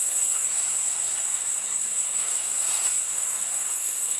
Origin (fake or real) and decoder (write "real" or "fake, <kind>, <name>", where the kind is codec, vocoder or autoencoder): fake, codec, SNAC